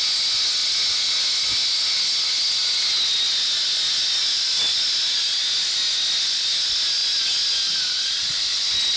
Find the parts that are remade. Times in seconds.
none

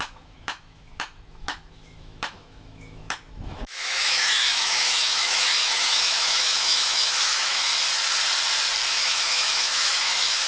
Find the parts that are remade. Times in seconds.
0.0-7.7 (autoencoder, DAC-VAE); 8.9-10.5

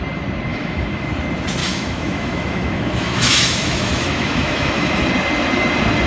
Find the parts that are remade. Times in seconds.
0.5-1.1 (autoencoder, DAC-VAE); 1.6-4.9

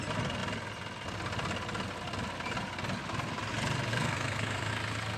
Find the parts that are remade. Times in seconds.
3.9-4.7 (codec, SNAC)

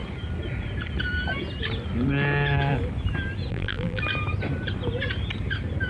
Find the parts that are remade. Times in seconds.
3.5-4.0 (vocoder, BigVGAN v2)

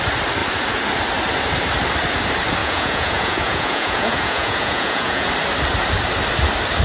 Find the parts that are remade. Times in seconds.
2.6-5.3 (vocoder, Vocos)

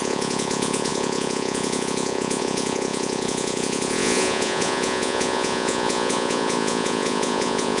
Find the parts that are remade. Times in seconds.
0.0-7.8 (vocoder, Vocos)

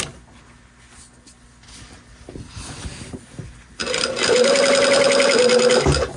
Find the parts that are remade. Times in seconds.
none